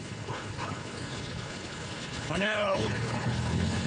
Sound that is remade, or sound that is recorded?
remade